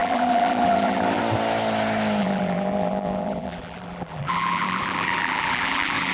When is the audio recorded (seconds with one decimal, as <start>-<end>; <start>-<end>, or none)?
1.2-2.2